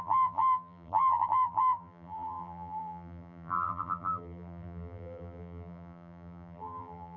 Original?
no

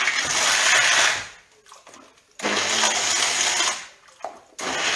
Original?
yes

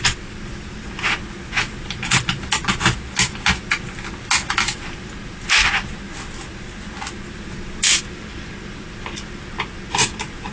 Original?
yes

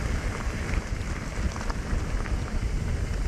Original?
yes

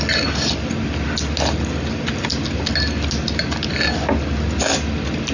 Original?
yes